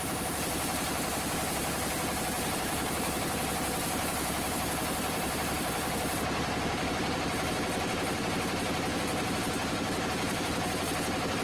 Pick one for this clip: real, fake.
fake